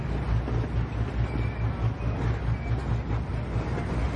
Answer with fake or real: real